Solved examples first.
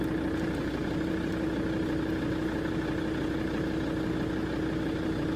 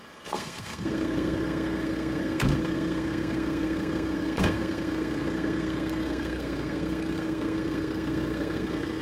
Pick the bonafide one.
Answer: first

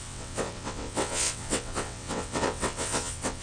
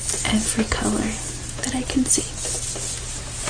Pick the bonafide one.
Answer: second